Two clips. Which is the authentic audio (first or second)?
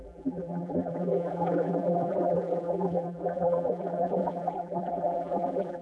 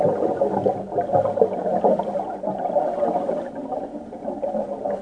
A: second